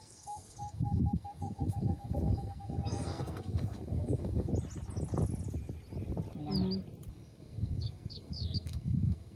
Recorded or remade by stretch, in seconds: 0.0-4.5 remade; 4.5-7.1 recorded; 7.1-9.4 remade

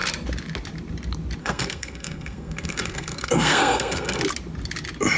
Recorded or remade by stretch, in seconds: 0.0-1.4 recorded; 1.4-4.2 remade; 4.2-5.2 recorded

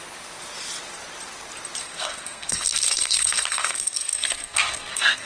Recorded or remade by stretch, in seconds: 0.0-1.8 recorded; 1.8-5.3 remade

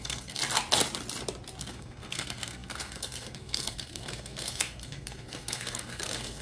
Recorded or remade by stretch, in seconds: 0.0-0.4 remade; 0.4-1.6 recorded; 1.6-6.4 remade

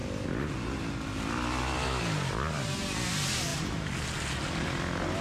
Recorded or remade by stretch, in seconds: 0.0-5.2 recorded

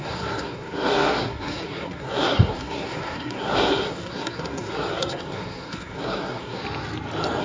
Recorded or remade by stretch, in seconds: 0.0-6.6 remade; 6.6-7.4 recorded

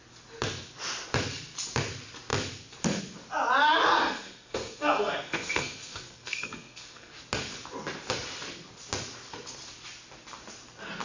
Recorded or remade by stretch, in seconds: 0.0-4.0 recorded; 4.0-7.1 remade; 7.1-11.0 recorded